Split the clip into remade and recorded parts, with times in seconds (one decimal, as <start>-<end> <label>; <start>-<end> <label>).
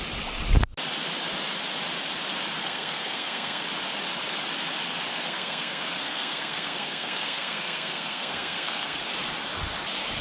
0.0-2.6 recorded; 2.6-3.6 remade; 3.6-5.1 recorded; 5.1-9.0 remade; 9.0-10.2 recorded